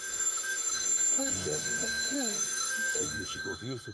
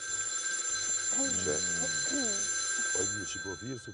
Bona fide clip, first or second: second